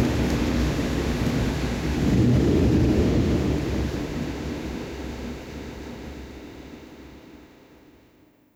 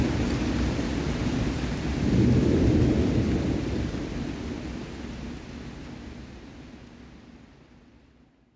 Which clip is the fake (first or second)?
first